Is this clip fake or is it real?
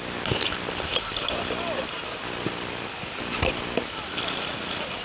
real